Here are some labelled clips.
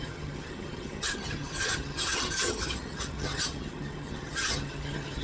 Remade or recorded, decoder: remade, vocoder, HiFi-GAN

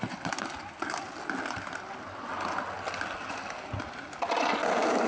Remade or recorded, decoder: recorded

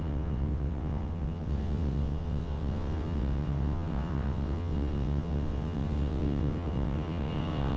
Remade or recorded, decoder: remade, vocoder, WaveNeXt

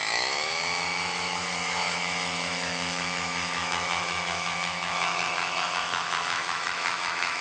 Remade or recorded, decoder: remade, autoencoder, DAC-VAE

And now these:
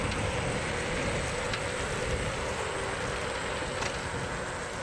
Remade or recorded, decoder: recorded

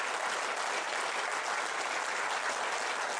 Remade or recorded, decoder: recorded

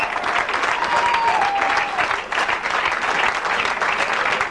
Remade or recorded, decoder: recorded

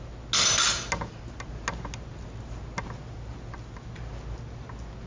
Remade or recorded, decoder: recorded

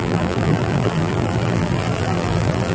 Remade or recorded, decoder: remade, vocoder, BigVGAN v2